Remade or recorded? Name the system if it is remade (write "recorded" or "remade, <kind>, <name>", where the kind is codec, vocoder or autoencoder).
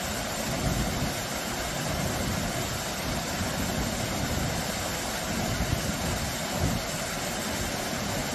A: recorded